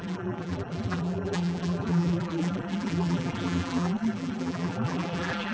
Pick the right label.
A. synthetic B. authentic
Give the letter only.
A